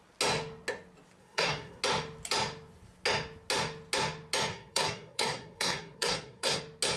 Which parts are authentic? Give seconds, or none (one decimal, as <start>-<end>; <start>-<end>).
0.0-1.2; 1.8-4.5; 6.6-7.0